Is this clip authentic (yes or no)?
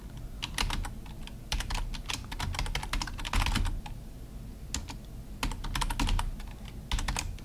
yes